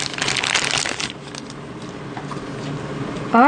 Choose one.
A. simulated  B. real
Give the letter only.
B